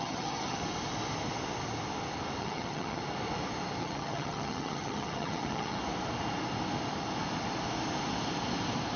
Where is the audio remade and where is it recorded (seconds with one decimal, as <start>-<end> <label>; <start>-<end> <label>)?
0.0-0.6 remade; 0.6-2.4 recorded; 2.4-3.0 remade; 3.0-3.8 recorded; 3.8-5.8 remade; 5.8-9.0 recorded